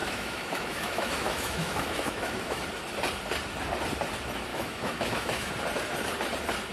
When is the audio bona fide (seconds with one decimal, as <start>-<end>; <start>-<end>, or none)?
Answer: 2.6-4.5; 5.5-6.7